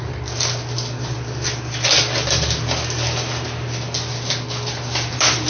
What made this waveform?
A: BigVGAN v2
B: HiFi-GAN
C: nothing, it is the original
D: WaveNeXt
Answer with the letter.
C